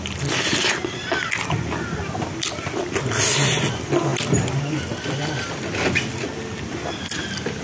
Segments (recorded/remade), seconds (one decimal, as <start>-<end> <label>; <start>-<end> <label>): 0.0-7.6 recorded